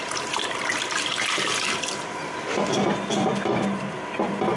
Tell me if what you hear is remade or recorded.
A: remade